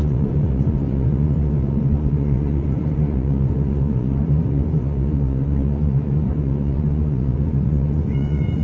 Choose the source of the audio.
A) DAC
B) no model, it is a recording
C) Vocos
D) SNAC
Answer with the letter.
C